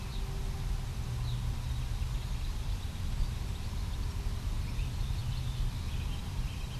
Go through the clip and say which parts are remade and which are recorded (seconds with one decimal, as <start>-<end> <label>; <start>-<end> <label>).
0.0-6.8 recorded

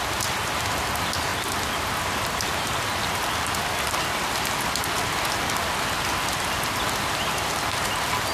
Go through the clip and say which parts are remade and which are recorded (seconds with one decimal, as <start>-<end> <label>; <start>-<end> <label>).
0.0-8.3 recorded